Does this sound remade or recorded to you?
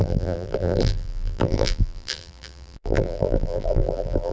remade